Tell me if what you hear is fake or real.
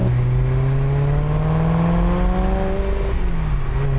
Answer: real